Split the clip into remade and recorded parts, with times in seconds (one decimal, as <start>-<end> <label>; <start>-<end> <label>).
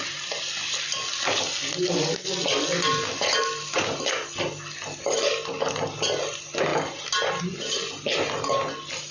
0.0-9.1 recorded